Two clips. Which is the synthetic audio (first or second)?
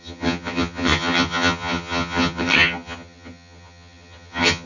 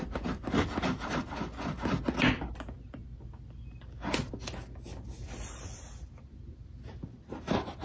first